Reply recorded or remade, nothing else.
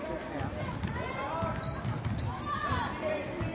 recorded